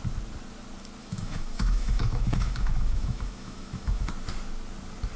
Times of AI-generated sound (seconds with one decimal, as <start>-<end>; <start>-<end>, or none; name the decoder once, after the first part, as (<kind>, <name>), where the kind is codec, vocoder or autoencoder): 1.0-4.1 (autoencoder, DAC-VAE)